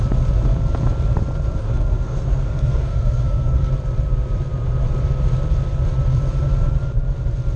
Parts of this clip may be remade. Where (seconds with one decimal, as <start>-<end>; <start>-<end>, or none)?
1.6-3.7